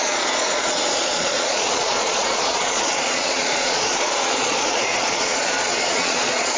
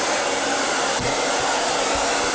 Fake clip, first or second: first